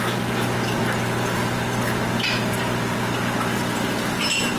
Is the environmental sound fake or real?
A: real